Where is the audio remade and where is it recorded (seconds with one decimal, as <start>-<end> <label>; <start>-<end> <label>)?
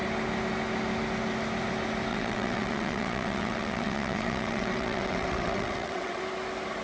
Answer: 0.0-2.1 recorded; 2.1-6.2 remade; 6.2-6.8 recorded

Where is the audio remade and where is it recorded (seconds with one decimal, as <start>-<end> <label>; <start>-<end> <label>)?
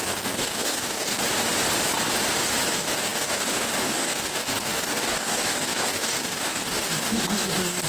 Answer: 0.0-1.2 remade; 1.2-2.7 recorded; 2.7-7.9 remade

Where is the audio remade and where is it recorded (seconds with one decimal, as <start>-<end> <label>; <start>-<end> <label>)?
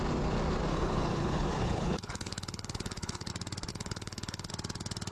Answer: 0.0-0.7 recorded; 0.7-3.3 remade; 3.3-3.7 recorded; 3.7-4.5 remade; 4.5-5.1 recorded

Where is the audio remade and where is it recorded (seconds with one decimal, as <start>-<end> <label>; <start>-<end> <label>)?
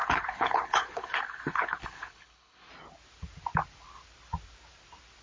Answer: 0.0-2.7 remade; 2.7-5.2 recorded